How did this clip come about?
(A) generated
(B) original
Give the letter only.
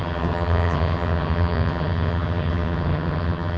A